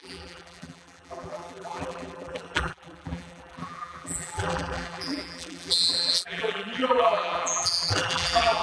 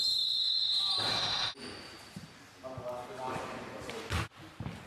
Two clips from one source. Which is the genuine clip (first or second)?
second